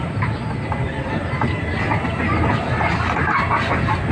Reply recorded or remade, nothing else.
recorded